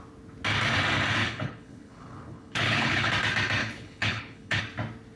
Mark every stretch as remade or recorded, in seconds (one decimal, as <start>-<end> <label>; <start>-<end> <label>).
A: 0.0-1.2 recorded; 1.2-3.1 remade; 3.1-3.6 recorded; 3.6-4.6 remade; 4.6-5.2 recorded